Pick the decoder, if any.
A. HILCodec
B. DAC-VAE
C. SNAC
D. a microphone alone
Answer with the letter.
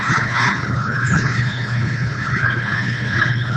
A